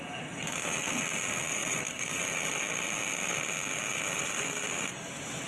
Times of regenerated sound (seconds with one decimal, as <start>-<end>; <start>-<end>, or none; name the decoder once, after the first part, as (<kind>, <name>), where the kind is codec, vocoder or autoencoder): none